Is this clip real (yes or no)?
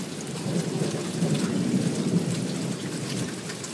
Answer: yes